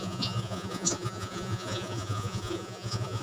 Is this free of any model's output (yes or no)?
no